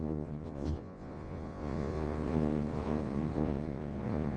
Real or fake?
fake